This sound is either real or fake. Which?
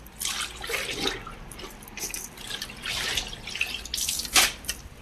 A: real